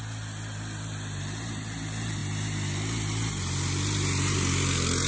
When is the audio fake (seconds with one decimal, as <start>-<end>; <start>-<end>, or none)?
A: none